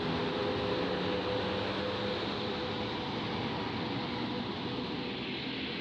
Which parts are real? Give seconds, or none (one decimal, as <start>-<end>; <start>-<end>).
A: 0.0-5.8